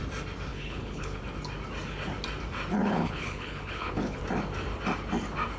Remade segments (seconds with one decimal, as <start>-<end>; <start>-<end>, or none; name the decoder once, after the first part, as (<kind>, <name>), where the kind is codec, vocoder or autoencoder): 0.5-1.2 (codec, HILCodec); 2.8-4.2